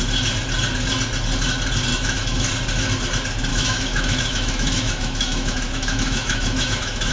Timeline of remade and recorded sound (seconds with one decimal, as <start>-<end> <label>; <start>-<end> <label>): 0.0-1.9 recorded; 1.9-2.5 remade; 2.5-3.5 recorded; 3.5-7.1 remade